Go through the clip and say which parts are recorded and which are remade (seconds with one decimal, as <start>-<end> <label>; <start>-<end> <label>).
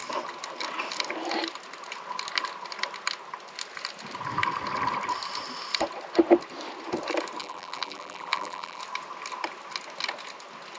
0.0-7.4 recorded; 7.4-8.8 remade; 8.8-10.8 recorded